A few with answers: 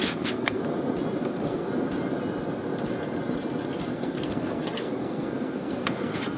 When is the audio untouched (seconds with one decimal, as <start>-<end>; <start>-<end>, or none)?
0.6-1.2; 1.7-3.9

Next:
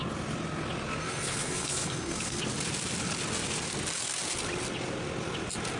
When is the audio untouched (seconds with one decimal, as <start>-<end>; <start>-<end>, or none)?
0.0-1.0; 2.4-5.8

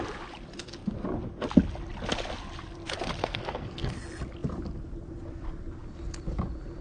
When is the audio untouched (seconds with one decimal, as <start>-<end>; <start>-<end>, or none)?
0.0-3.2; 4.0-6.8

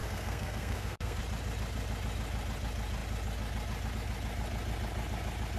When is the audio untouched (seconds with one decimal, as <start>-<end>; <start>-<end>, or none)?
1.2-5.6